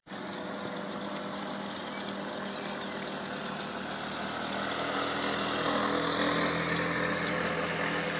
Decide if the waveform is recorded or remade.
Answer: recorded